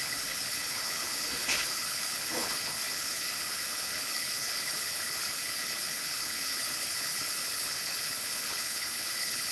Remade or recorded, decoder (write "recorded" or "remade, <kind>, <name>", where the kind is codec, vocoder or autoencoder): remade, codec, HILCodec